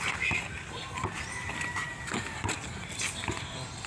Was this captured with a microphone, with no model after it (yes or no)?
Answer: yes